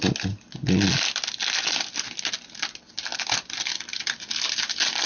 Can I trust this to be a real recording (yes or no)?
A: yes